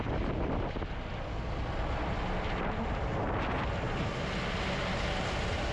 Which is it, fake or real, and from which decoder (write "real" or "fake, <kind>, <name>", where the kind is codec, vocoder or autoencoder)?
real